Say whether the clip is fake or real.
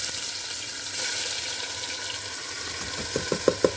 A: real